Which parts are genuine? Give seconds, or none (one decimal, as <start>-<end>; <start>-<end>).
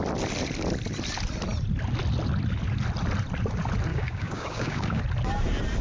0.0-3.9; 5.0-5.8